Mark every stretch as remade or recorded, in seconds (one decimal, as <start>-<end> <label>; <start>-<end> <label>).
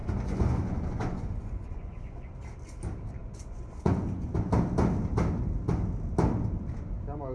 0.0-2.3 remade; 2.3-3.2 recorded; 3.2-4.5 remade; 4.5-7.3 recorded